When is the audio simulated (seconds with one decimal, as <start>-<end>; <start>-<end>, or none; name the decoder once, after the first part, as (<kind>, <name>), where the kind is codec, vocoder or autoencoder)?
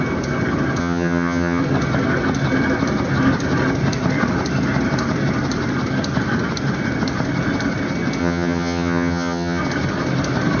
0.8-1.6 (vocoder, HiFi-GAN); 8.2-9.6